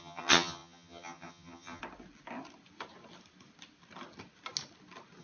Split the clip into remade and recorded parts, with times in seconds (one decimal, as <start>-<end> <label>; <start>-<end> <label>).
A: 0.0-1.8 remade; 1.8-5.2 recorded